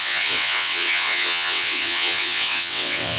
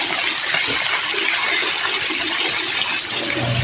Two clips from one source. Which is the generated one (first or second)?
first